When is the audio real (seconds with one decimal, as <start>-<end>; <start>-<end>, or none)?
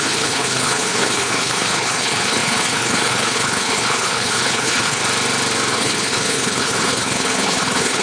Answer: 5.0-5.7